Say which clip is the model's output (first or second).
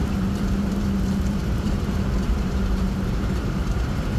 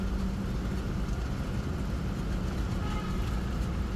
first